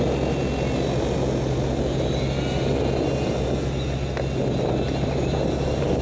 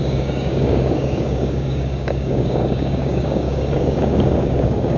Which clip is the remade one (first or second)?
second